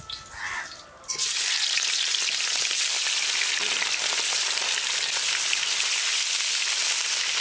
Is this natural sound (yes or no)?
yes